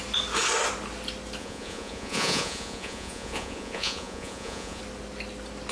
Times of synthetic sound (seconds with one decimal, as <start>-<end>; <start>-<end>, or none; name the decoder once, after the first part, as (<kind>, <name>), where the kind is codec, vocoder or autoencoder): 1.4-4.8 (vocoder, Vocos)